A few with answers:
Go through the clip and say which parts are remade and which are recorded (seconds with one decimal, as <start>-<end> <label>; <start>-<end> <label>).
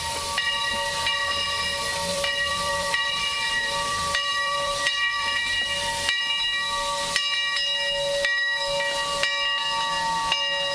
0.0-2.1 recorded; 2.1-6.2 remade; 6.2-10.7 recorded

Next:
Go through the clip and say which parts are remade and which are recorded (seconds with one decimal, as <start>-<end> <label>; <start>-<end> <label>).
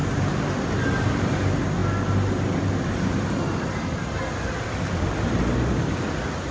0.0-6.5 recorded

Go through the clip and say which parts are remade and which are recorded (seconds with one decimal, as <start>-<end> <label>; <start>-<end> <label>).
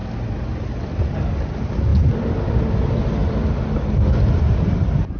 0.0-5.2 recorded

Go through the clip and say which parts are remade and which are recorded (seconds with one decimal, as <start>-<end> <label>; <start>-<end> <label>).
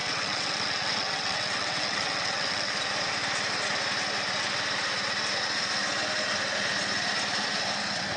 0.0-2.7 remade; 2.7-8.2 recorded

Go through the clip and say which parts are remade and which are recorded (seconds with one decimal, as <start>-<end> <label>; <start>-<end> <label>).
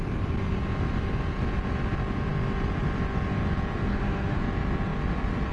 0.0-3.9 recorded; 3.9-4.4 remade; 4.4-5.5 recorded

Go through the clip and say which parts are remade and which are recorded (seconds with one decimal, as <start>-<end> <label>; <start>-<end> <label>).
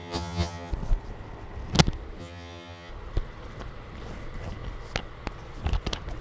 0.0-0.7 remade; 0.7-2.2 recorded; 2.2-2.9 remade; 2.9-6.2 recorded